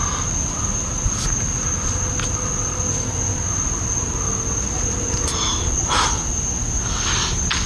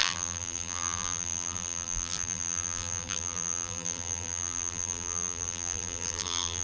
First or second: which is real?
first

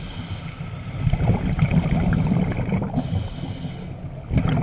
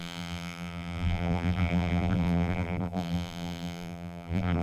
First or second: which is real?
first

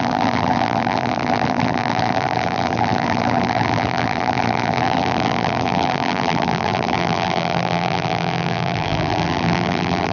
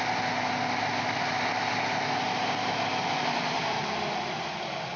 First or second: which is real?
second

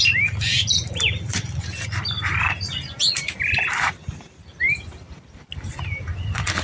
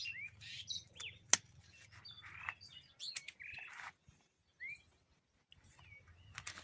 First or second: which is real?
second